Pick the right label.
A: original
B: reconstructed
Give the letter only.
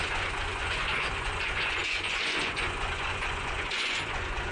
B